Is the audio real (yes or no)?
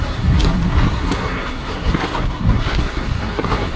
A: no